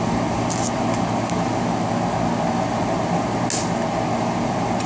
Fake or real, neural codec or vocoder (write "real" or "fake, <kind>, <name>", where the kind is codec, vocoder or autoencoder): real